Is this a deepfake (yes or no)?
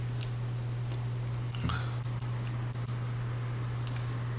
no